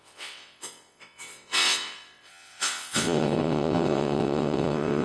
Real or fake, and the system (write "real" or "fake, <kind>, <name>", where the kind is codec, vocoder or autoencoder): fake, vocoder, WaveNeXt